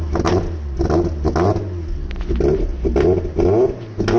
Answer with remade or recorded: recorded